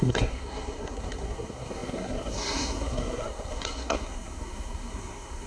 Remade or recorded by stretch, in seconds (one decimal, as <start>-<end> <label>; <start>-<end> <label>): 0.0-5.5 remade